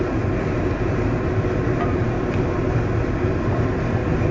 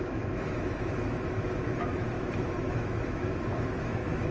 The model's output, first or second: second